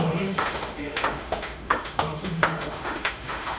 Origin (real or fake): fake